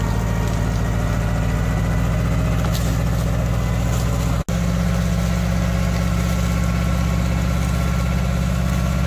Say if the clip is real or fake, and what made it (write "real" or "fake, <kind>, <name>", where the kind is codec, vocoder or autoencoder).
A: real